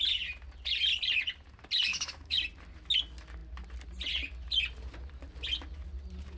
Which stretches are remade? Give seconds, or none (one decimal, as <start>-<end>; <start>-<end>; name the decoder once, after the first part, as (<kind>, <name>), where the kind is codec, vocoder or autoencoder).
1.9-2.4 (autoencoder, DAC-VAE)